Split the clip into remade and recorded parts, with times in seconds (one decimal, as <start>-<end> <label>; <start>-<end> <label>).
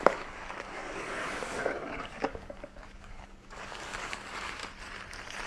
0.0-4.6 remade; 4.6-5.5 recorded